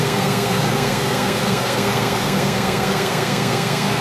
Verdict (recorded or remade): remade